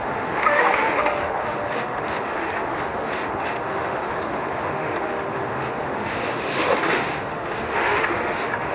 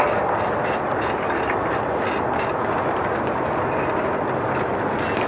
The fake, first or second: first